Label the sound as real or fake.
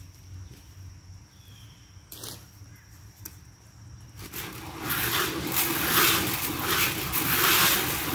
real